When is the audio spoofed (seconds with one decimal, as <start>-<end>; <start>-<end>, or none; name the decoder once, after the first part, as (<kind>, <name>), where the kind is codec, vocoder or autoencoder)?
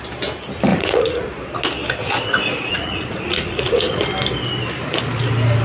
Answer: 0.7-1.4 (vocoder, Vocos); 2.0-4.0